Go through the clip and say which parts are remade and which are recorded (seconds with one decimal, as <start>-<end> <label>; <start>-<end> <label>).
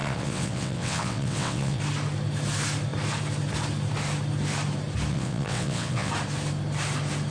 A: 0.0-1.8 remade; 1.8-5.1 recorded; 5.1-6.1 remade; 6.1-7.3 recorded